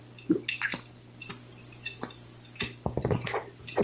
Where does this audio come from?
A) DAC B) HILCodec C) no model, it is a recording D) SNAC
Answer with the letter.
C